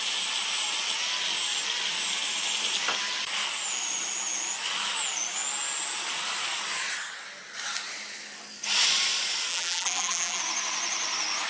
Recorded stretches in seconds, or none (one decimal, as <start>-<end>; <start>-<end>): 0.0-9.5; 10.4-11.5